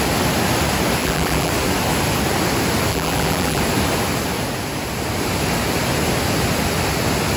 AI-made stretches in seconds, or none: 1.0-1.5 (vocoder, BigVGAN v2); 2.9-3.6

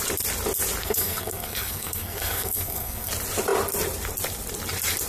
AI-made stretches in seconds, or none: 0.8-3.1 (codec, SNAC)

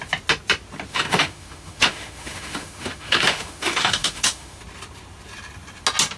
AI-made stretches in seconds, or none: 0.9-4.6 (autoencoder, DAC-VAE)

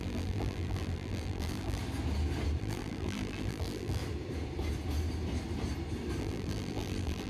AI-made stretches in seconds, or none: 0.0-1.8 (vocoder, BigVGAN v2); 2.6-4.0; 6.2-7.3

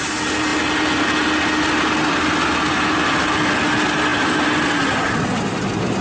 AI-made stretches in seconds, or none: none

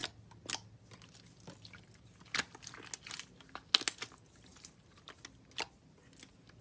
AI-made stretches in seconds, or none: 4.5-5.1 (vocoder, BigVGAN v2)